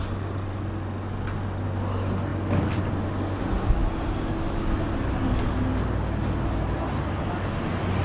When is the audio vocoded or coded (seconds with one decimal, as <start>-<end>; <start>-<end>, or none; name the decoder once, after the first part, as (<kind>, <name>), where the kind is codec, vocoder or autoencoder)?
none